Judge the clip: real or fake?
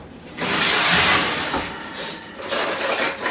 fake